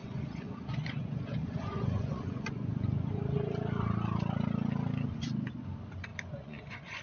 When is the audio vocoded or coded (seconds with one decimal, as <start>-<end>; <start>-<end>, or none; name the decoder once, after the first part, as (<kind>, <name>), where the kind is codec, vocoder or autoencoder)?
0.0-3.1 (vocoder, Vocos); 6.1-7.0